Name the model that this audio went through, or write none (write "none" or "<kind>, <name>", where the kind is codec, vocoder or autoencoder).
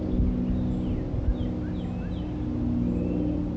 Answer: none